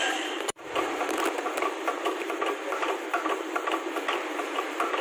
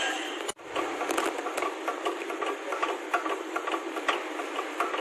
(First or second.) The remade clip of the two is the first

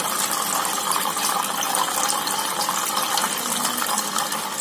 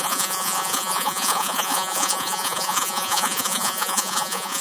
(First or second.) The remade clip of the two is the second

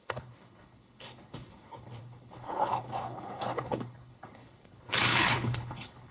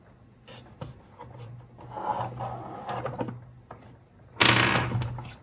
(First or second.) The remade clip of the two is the first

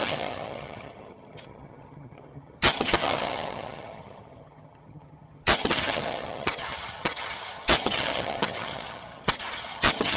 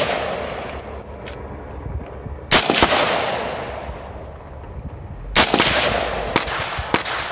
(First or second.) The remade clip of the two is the first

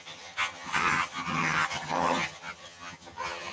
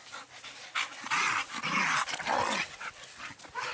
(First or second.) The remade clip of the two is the first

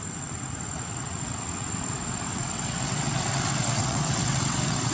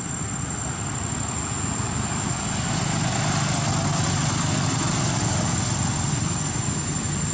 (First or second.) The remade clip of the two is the first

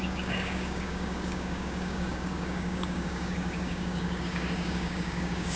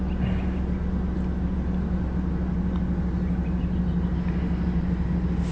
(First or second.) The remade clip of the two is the first